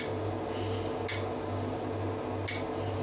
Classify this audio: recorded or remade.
recorded